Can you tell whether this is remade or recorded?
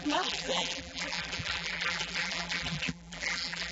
remade